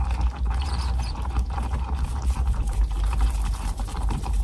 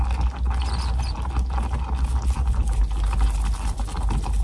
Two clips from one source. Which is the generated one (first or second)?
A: first